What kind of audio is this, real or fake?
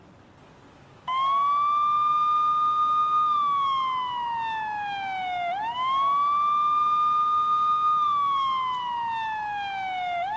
real